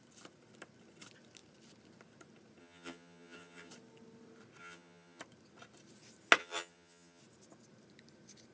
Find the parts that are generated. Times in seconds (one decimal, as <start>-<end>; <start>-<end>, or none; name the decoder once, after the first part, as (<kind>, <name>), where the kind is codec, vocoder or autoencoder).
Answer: 2.6-3.7 (vocoder, HiFi-GAN); 4.6-5.2; 6.4-7.2